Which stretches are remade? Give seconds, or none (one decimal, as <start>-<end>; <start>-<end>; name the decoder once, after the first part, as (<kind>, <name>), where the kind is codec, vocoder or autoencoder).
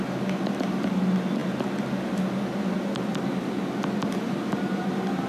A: none